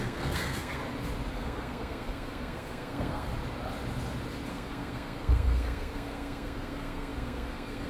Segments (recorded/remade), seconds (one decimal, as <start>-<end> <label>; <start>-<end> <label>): 0.0-0.8 remade; 0.8-1.3 recorded; 1.3-3.3 remade; 3.3-4.5 recorded; 4.5-7.9 remade